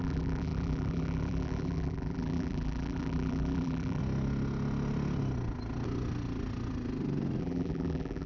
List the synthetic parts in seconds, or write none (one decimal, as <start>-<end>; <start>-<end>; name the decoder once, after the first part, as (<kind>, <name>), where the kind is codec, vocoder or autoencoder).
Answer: 0.0-4.0 (vocoder, BigVGAN v2); 7.4-8.3